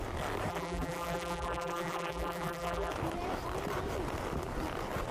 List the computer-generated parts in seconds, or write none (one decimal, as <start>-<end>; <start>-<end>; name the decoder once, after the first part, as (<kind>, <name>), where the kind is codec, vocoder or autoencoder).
0.5-2.9 (vocoder, BigVGAN v2)